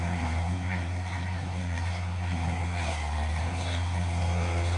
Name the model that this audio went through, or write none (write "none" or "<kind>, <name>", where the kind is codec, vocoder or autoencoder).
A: codec, SNAC